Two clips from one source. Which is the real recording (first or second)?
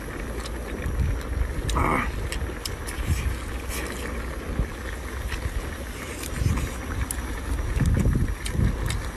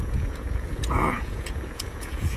first